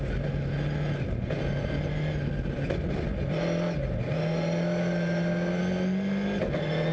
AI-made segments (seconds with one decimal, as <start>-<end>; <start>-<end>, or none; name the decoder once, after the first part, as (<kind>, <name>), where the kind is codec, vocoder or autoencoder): none